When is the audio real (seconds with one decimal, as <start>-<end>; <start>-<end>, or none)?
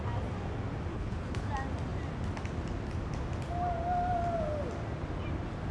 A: 0.0-0.9; 1.5-5.7